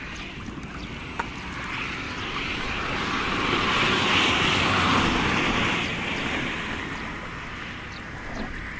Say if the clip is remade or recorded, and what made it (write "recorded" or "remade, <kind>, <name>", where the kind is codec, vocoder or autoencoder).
recorded